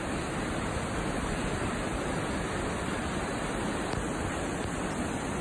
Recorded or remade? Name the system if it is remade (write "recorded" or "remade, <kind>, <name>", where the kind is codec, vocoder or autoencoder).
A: recorded